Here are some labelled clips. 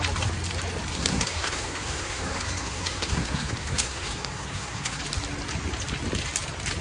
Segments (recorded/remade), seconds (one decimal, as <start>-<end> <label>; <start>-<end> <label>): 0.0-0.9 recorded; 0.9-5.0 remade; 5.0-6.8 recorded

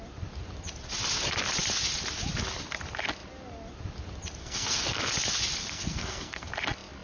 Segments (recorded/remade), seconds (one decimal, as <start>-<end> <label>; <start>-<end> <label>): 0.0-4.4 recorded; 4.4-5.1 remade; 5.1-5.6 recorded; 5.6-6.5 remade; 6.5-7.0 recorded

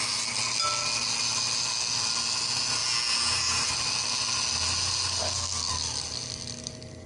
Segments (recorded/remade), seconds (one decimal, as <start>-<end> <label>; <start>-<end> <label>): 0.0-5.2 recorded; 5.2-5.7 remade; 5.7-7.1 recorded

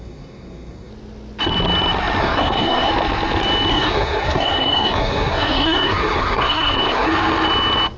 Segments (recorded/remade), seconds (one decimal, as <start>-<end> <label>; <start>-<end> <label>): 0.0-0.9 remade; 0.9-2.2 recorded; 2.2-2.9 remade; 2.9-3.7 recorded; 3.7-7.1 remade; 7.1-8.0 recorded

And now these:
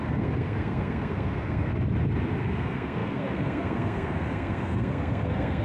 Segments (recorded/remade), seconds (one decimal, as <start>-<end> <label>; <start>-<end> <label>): 0.0-1.7 remade; 1.7-2.4 recorded; 2.4-5.6 remade

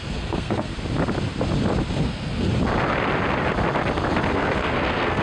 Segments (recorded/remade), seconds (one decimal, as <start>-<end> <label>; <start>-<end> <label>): 0.0-0.7 remade; 0.7-1.9 recorded; 1.9-2.5 remade; 2.5-4.3 recorded; 4.3-5.2 remade

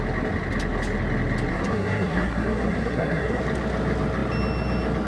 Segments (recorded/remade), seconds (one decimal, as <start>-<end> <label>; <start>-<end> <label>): 0.0-1.5 recorded; 1.5-3.4 remade; 3.4-5.1 recorded

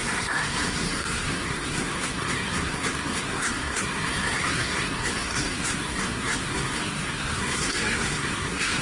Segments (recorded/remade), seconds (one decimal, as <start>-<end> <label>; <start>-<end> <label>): 0.0-8.8 remade